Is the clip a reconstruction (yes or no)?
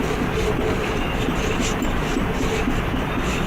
no